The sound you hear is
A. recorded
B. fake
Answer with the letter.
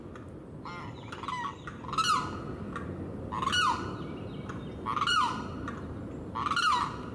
A